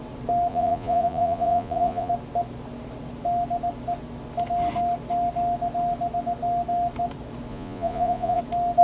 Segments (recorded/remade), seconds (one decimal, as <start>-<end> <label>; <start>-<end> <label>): 0.0-0.5 recorded; 0.5-2.1 remade; 2.1-7.5 recorded; 7.5-8.4 remade; 8.4-8.8 recorded